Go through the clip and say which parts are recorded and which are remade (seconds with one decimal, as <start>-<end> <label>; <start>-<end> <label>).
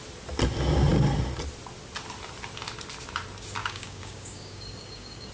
0.0-3.6 recorded; 3.6-5.3 remade